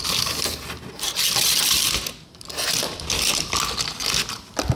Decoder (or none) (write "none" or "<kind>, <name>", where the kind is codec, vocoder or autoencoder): none